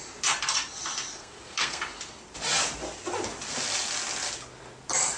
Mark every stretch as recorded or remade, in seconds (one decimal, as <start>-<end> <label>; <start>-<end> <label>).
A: 0.0-1.1 recorded; 1.1-1.8 remade; 1.8-5.2 recorded